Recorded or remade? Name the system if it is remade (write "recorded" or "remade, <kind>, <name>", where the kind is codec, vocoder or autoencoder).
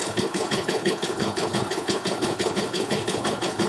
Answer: remade, codec, HILCodec